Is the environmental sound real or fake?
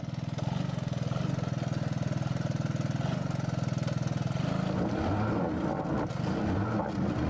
real